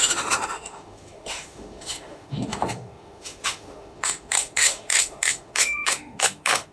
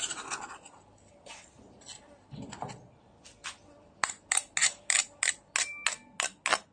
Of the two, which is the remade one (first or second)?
first